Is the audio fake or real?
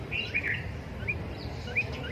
real